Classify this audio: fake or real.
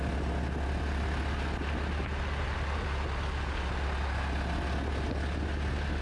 real